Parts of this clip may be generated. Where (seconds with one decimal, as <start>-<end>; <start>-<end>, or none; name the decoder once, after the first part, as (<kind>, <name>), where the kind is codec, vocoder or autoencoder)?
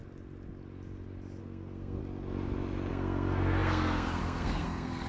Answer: 1.4-2.0 (codec, SNAC); 2.9-5.1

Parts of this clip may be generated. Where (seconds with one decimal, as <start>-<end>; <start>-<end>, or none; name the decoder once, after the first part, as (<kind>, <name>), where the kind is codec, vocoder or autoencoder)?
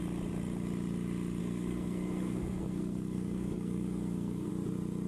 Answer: 1.4-4.5 (codec, SNAC)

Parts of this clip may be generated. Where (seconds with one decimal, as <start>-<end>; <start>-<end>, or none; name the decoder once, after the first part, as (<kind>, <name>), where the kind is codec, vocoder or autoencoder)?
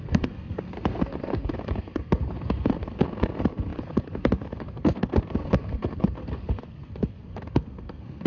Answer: 0.0-8.3 (codec, SNAC)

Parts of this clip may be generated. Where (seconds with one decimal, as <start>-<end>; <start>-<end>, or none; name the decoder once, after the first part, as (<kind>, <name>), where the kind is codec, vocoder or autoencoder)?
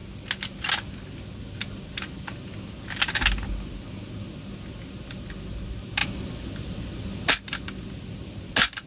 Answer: none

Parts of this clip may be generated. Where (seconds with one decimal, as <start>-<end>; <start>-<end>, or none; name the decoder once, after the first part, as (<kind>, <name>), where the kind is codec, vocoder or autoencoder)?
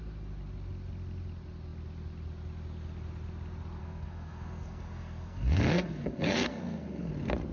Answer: 3.8-7.1 (codec, SNAC)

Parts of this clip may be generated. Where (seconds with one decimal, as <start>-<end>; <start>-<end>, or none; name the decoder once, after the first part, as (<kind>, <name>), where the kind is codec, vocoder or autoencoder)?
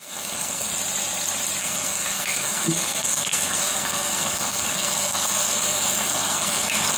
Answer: 0.0-0.7 (codec, SNAC); 1.6-7.0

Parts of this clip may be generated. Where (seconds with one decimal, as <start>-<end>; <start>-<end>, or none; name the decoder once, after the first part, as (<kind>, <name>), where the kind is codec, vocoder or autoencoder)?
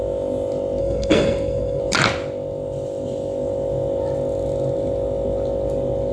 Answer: 0.8-1.8 (codec, SNAC)